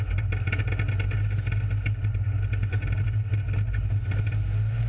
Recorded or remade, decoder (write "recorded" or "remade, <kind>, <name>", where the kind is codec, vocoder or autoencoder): recorded